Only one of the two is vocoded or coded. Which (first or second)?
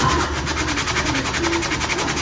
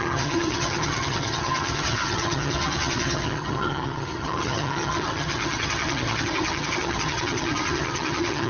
second